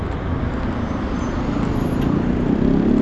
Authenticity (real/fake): real